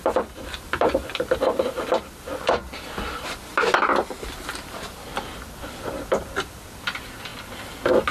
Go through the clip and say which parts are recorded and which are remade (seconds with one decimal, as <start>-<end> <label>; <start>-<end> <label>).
0.0-3.5 remade; 3.5-4.9 recorded; 4.9-7.3 remade; 7.3-8.1 recorded